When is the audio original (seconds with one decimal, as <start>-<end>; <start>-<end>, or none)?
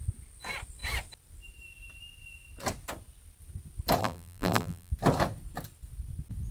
0.0-4.0; 4.9-6.5